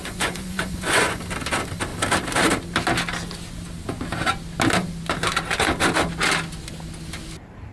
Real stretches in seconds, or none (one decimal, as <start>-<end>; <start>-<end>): 1.2-7.7